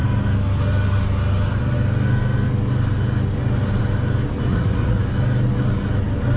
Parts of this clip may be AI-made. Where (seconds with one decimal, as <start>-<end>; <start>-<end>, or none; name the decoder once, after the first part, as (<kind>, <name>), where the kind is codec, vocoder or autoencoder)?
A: 4.5-5.1 (vocoder, Vocos)